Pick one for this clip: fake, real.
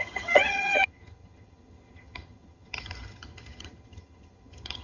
fake